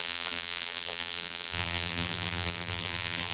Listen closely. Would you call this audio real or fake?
fake